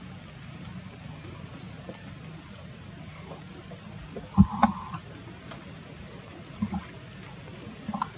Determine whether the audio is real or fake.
real